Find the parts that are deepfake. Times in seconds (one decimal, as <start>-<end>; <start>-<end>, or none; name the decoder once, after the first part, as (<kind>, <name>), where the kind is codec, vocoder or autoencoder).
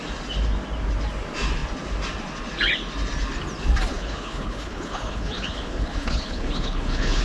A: 3.9-7.2 (codec, HILCodec)